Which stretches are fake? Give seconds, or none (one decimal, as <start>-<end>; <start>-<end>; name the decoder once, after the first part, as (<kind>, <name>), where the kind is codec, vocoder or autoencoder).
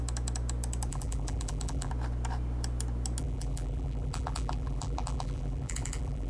0.9-1.9 (vocoder, BigVGAN v2); 3.2-6.3